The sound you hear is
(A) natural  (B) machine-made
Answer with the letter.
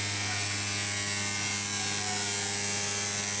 A